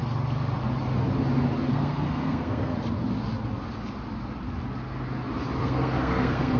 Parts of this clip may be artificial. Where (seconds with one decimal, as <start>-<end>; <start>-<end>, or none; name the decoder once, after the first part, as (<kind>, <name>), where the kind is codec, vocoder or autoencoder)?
1.7-2.7 (codec, SNAC); 5.6-6.6

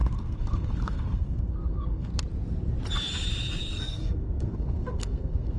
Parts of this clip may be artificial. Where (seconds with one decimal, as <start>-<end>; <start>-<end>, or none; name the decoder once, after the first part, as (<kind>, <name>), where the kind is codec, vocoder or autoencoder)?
0.0-2.1 (codec, SNAC); 3.7-5.6

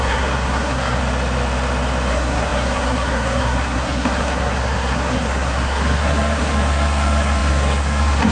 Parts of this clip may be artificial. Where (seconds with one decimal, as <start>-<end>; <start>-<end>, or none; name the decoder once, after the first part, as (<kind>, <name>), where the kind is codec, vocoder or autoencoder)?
0.0-1.0 (codec, SNAC); 2.1-8.3

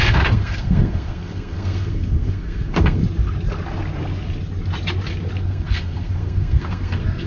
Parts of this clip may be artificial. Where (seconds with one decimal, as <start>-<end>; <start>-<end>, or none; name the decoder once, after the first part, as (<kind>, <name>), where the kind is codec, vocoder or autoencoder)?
0.0-3.0 (codec, SNAC); 5.4-7.3

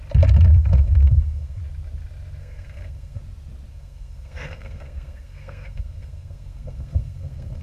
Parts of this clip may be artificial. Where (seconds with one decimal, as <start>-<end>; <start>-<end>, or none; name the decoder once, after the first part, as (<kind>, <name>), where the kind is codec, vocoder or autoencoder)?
0.5-1.6 (codec, SNAC); 2.4-3.2; 3.7-7.6

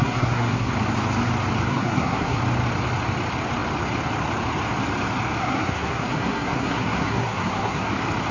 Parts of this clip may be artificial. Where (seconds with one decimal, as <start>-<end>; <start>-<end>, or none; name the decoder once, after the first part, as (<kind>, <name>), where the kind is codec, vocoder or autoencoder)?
0.0-0.7 (codec, SNAC); 1.7-2.4; 5.4-7.9

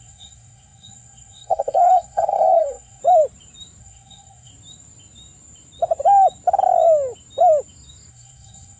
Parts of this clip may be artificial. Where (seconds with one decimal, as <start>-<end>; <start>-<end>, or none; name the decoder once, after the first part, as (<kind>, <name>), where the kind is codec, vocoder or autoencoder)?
0.0-3.0 (codec, SNAC); 3.8-4.5; 8.1-8.8